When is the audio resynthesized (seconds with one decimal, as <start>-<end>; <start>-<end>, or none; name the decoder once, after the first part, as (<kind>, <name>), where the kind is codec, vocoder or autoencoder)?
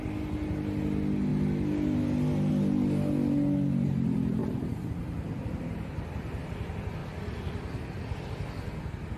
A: 4.4-5.6 (vocoder, BigVGAN v2)